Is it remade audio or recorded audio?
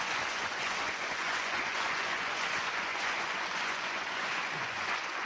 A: remade